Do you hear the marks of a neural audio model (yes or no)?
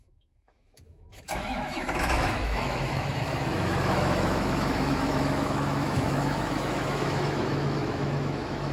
yes